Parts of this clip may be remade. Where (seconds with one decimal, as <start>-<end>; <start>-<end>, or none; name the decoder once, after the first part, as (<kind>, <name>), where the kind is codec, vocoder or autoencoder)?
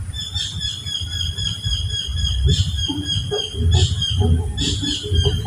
none